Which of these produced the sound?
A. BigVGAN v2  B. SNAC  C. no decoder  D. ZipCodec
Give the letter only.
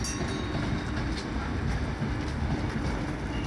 C